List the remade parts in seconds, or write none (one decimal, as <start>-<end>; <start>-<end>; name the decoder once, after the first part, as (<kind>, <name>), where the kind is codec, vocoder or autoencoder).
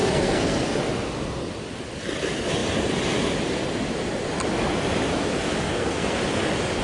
0.0-0.8 (codec, SNAC); 5.7-6.2